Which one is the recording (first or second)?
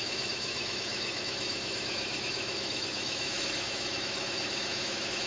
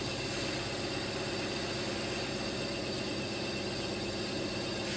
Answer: second